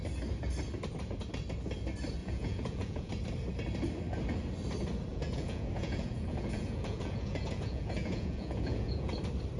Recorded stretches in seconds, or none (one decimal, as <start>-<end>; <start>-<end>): 0.0-2.2; 3.1-5.1; 9.1-9.6